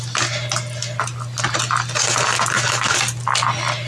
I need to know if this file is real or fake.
real